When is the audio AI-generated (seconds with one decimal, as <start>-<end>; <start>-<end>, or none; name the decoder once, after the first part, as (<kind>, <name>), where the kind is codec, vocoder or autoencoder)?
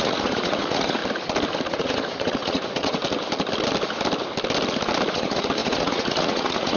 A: 0.0-1.0 (vocoder, Vocos); 1.7-3.0; 5.1-6.8